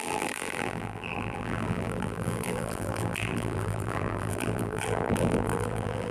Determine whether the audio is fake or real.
fake